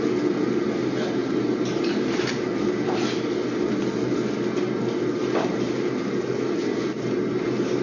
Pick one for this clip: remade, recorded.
recorded